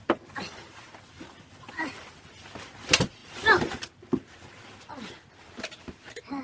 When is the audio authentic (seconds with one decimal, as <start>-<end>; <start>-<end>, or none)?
0.0-6.4